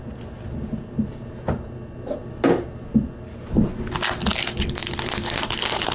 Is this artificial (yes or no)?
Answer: no